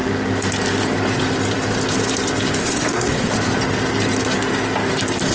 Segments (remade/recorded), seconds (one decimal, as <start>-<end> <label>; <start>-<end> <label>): 0.0-2.6 recorded; 2.6-3.3 remade; 3.3-5.3 recorded

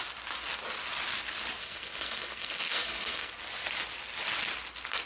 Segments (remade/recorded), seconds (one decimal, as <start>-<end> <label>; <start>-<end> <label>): 0.0-1.6 recorded; 1.6-3.3 remade; 3.3-5.1 recorded